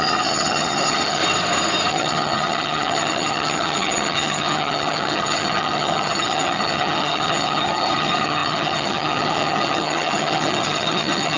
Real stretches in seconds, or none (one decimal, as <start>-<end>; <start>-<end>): 1.2-1.9